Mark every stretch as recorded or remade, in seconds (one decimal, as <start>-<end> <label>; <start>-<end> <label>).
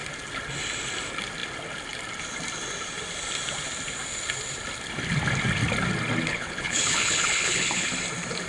0.0-6.3 recorded; 6.3-7.9 remade; 7.9-8.5 recorded